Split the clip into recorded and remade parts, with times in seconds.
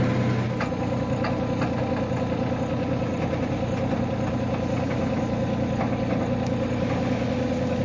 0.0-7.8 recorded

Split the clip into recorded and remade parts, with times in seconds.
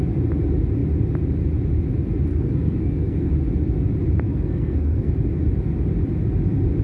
0.0-2.3 recorded; 2.3-3.3 remade; 3.3-4.3 recorded; 4.3-5.1 remade; 5.1-6.8 recorded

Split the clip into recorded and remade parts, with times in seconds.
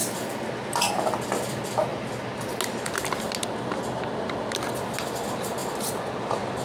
0.0-6.6 recorded